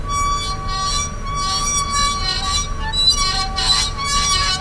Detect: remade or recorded recorded